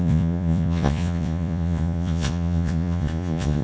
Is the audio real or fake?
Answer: fake